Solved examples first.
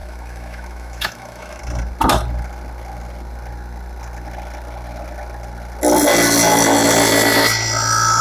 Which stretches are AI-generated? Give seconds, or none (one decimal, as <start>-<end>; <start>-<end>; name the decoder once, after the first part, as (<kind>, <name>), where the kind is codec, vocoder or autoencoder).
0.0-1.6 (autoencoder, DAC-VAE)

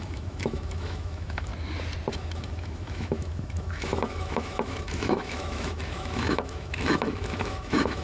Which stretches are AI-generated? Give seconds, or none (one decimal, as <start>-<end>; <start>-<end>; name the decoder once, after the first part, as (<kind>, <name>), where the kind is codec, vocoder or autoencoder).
0.0-1.5 (autoencoder, DAC-VAE); 2.1-8.0

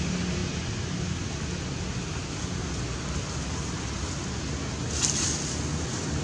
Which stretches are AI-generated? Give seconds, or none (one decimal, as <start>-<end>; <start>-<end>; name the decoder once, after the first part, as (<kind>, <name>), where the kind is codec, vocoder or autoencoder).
none

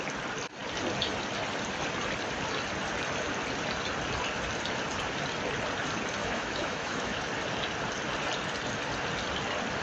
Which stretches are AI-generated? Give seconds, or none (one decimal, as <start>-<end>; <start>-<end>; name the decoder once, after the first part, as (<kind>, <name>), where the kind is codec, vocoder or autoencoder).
6.2-7.2 (autoencoder, DAC-VAE)

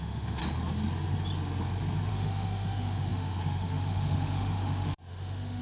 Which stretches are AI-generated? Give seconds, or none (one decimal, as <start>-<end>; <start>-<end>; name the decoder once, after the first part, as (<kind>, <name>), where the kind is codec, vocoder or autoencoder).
0.0-0.4 (autoencoder, DAC-VAE); 2.1-5.6